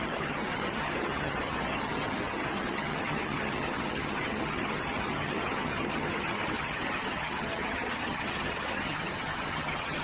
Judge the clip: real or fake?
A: fake